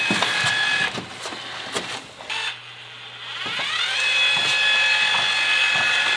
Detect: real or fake real